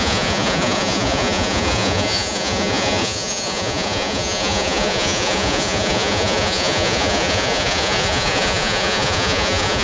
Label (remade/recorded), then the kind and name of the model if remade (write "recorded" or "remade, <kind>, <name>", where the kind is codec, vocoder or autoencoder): remade, vocoder, Vocos